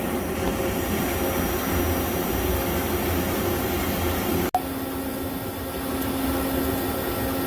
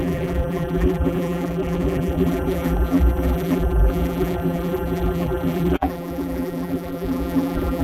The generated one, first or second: second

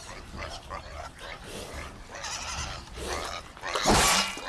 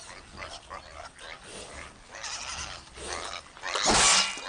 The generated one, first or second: first